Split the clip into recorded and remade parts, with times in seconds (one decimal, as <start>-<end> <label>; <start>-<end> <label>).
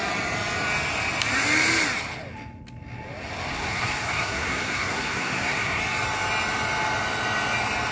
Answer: 0.0-3.5 recorded; 3.5-5.8 remade; 5.8-7.9 recorded